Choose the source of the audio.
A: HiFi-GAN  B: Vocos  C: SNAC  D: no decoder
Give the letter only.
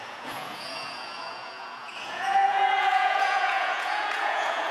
B